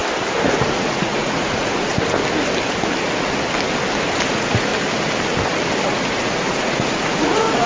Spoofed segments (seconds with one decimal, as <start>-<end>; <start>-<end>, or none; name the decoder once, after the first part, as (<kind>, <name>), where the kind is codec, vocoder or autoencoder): 0.6-1.9 (vocoder, Vocos); 4.3-4.7; 5.9-7.7